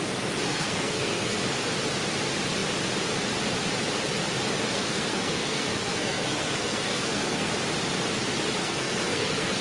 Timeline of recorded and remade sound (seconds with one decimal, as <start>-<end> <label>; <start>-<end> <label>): 0.0-0.5 recorded; 0.5-1.4 remade; 1.4-4.7 recorded; 4.7-7.5 remade; 7.5-8.6 recorded; 8.6-9.6 remade